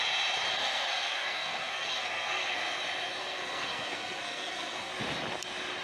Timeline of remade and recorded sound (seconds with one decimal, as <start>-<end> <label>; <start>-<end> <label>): 0.0-0.5 recorded; 0.5-2.6 remade; 2.6-3.2 recorded; 3.2-4.9 remade; 4.9-5.8 recorded